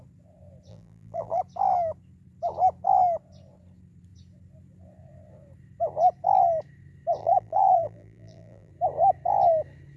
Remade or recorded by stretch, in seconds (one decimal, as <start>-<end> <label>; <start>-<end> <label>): 0.0-0.7 recorded; 0.7-1.4 remade; 1.4-7.2 recorded; 7.2-8.7 remade; 8.7-10.0 recorded